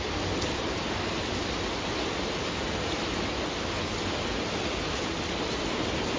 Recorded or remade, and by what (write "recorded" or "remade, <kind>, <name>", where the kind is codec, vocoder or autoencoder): recorded